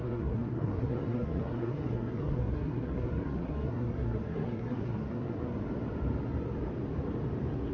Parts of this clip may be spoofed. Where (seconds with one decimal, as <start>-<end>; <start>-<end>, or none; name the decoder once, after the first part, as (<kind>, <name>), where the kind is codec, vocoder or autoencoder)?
0.0-5.6 (codec, SNAC)